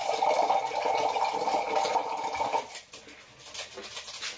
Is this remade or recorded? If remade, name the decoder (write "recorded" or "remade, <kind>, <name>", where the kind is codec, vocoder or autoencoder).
recorded